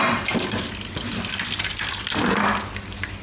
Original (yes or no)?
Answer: yes